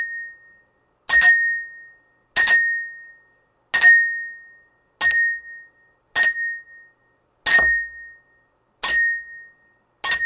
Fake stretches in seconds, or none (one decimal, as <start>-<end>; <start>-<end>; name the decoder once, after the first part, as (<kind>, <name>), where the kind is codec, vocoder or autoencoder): none